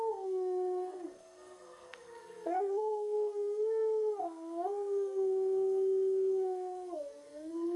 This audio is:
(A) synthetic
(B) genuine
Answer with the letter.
A